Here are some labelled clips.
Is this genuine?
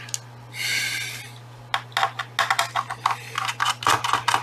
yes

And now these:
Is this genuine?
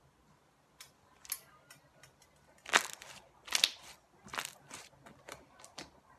yes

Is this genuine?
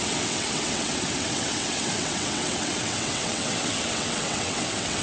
no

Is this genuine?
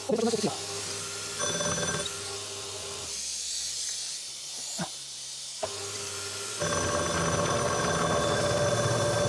yes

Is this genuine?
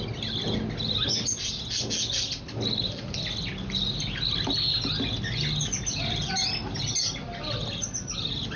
yes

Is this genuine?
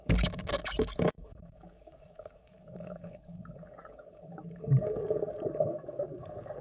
no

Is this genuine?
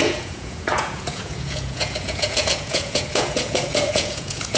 no